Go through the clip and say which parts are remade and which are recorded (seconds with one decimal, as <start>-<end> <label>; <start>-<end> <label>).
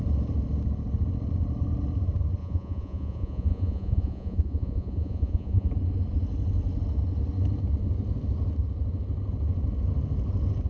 0.0-2.4 recorded; 2.4-5.7 remade; 5.7-10.7 recorded